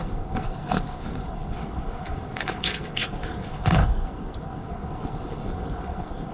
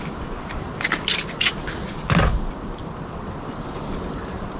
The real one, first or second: second